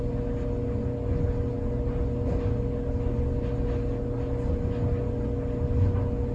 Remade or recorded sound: recorded